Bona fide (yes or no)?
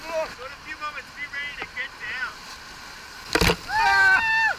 yes